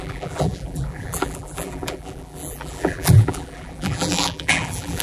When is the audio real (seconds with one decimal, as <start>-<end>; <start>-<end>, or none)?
none